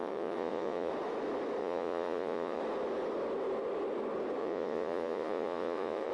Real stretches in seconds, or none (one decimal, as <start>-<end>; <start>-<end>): 0.9-1.6; 2.6-4.4